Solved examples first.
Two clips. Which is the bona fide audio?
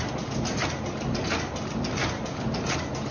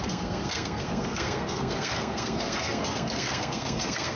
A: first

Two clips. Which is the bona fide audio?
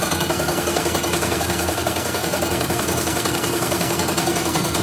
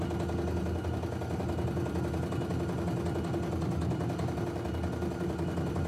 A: second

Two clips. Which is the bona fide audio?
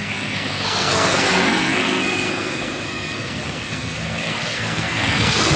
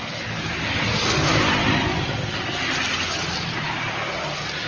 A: second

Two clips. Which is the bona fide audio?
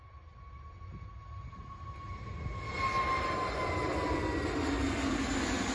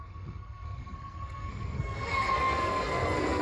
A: first